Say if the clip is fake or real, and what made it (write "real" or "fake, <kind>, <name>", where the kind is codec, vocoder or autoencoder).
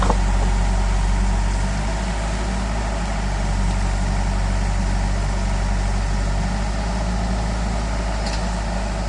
real